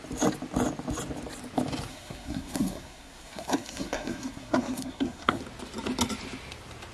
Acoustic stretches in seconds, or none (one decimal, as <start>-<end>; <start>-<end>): 0.0-1.9; 5.4-6.9